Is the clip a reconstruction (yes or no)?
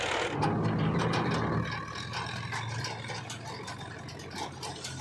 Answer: no